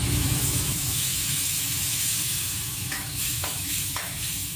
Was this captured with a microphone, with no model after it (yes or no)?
no